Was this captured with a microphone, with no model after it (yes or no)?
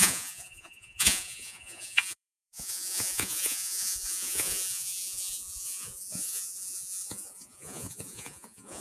no